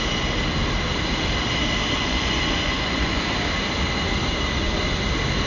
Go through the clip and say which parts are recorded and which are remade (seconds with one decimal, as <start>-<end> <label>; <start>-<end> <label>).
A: 0.0-2.0 recorded; 2.0-3.2 remade; 3.2-5.5 recorded

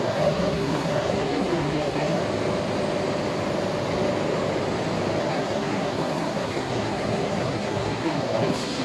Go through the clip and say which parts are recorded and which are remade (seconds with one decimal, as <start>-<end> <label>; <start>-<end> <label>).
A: 0.0-2.2 remade; 2.2-5.2 recorded; 5.2-8.8 remade

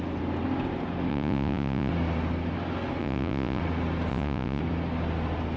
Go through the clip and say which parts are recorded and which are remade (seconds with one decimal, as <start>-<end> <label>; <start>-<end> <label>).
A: 0.0-1.1 recorded; 1.1-1.9 remade; 1.9-3.0 recorded; 3.0-3.6 remade; 3.6-4.1 recorded; 4.1-4.6 remade; 4.6-5.6 recorded

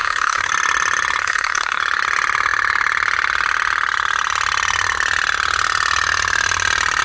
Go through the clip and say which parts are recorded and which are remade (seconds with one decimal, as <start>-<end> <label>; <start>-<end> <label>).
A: 0.0-0.5 remade; 0.5-1.2 recorded; 1.2-1.8 remade; 1.8-7.0 recorded

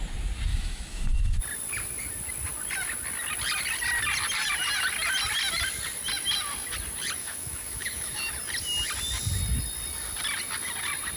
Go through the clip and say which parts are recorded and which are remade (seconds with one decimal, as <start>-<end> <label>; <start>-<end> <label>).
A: 0.0-0.5 recorded; 0.5-1.4 remade; 1.4-7.2 recorded; 7.2-8.3 remade; 8.3-11.2 recorded

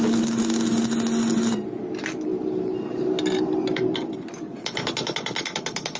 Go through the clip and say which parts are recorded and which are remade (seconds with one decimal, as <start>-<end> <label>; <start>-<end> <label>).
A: 0.0-6.0 recorded

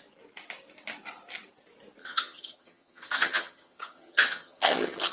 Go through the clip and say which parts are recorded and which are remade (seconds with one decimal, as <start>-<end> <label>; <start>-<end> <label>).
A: 0.0-2.0 recorded; 2.0-5.1 remade

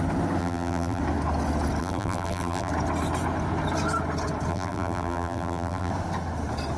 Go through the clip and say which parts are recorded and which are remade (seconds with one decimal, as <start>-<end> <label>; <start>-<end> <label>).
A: 0.0-0.4 recorded; 0.4-1.0 remade; 1.0-1.8 recorded; 1.8-2.7 remade; 2.7-4.5 recorded; 4.5-5.9 remade; 5.9-6.8 recorded